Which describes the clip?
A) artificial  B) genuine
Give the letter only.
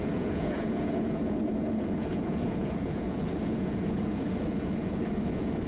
A